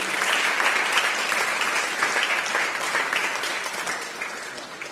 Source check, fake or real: real